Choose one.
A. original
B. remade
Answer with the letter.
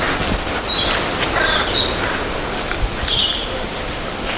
A